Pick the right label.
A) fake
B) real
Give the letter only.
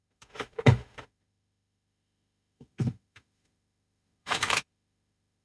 A